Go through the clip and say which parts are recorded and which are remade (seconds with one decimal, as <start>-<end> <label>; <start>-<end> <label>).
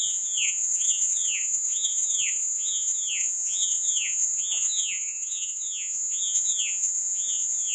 0.0-7.7 remade